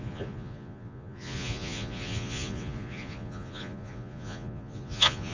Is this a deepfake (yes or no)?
yes